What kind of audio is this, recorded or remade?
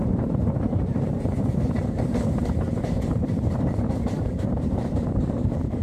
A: remade